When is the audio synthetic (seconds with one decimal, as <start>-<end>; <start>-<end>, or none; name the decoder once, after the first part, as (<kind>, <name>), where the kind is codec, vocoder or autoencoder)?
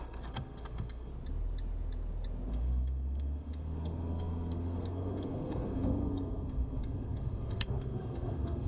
0.0-1.1 (codec, SNAC); 2.5-8.7